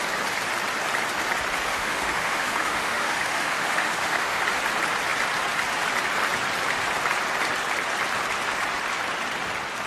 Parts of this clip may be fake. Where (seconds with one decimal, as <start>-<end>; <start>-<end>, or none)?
1.7-4.4